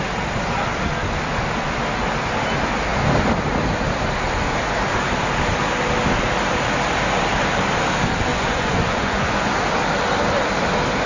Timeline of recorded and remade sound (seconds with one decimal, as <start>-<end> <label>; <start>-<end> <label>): 0.0-8.3 recorded; 8.3-9.5 remade; 9.5-11.1 recorded